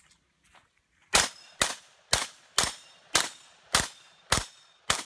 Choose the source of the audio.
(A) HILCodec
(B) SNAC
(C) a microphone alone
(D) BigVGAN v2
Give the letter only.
C